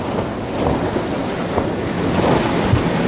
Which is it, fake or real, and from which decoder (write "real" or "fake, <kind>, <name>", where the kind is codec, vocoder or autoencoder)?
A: real